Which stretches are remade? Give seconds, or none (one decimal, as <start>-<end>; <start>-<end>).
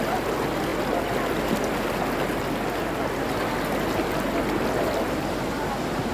none